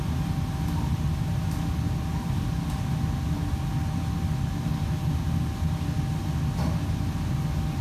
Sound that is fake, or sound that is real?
real